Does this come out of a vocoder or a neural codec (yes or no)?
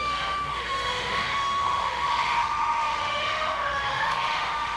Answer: yes